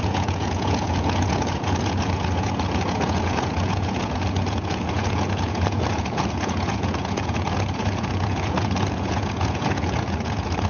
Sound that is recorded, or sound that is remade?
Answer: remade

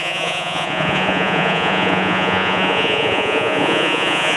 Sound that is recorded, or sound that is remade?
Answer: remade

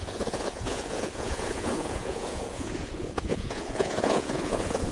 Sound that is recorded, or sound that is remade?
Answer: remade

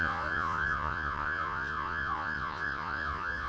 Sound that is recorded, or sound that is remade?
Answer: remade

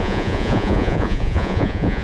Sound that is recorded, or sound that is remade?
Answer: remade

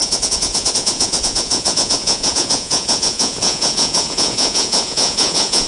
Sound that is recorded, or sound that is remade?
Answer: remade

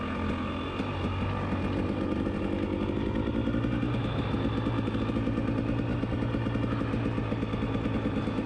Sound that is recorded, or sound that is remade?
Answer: recorded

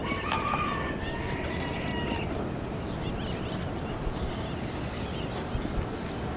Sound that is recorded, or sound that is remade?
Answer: recorded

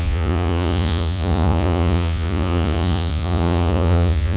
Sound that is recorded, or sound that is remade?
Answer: remade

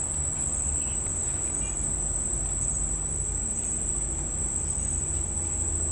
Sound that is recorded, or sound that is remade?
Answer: recorded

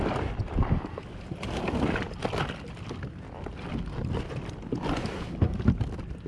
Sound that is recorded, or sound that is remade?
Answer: recorded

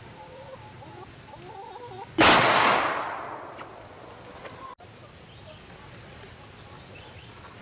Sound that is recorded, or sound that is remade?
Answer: recorded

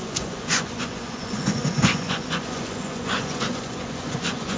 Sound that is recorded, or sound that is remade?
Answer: remade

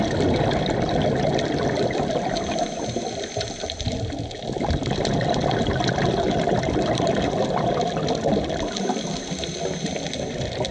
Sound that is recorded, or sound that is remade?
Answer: recorded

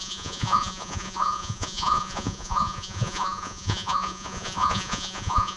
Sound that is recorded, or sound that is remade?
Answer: remade